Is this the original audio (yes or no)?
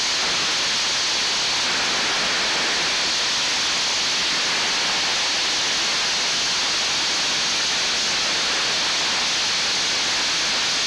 yes